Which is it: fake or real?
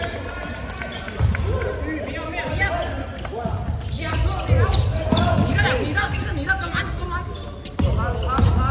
real